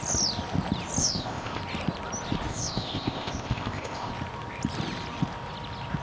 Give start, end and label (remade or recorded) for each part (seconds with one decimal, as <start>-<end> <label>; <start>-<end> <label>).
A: 0.0-1.0 recorded; 1.0-1.6 remade; 1.6-2.5 recorded; 2.5-4.1 remade; 4.1-6.0 recorded